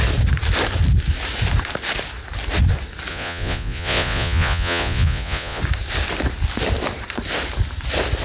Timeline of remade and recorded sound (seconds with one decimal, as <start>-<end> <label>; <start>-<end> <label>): 0.0-3.1 recorded; 3.1-5.6 remade; 5.6-8.2 recorded